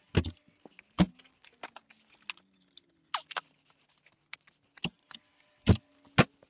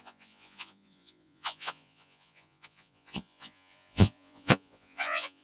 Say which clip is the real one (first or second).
first